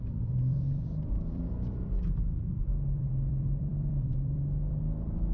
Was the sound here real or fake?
fake